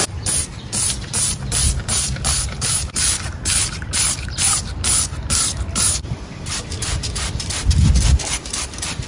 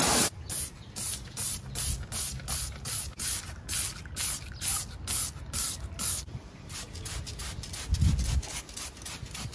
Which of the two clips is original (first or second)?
second